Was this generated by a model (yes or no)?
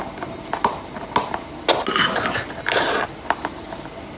no